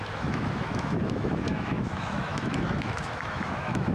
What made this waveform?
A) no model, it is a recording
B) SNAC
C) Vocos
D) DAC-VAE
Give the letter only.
D